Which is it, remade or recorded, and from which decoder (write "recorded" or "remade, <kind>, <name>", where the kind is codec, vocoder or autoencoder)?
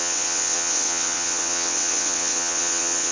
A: remade, vocoder, WaveNeXt